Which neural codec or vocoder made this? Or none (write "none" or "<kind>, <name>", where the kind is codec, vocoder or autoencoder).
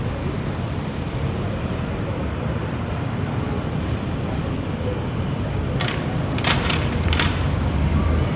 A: vocoder, BigVGAN v2